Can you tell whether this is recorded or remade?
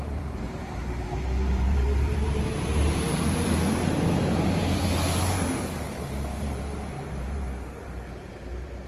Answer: remade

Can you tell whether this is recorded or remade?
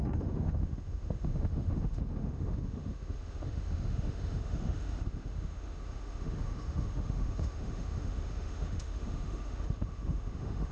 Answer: remade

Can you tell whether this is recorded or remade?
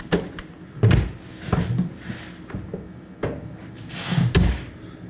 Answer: recorded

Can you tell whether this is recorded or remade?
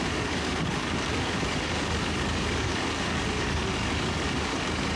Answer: remade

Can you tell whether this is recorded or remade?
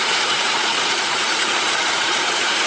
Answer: remade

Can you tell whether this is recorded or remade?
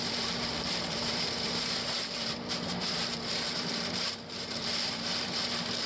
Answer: remade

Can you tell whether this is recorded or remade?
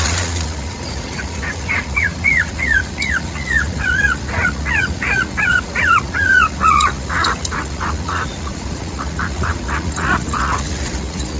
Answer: remade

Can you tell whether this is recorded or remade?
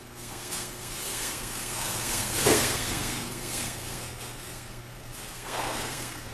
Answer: remade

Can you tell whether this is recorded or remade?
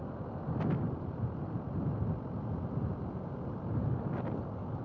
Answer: recorded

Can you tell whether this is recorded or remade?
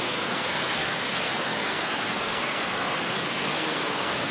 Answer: remade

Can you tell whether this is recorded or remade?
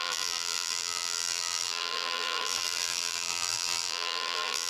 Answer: remade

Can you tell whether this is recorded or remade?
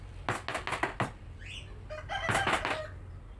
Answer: recorded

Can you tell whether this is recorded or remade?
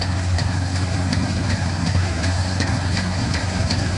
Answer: remade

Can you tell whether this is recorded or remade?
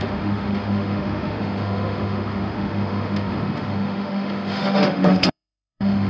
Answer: remade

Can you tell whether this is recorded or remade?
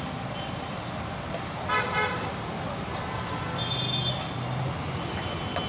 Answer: recorded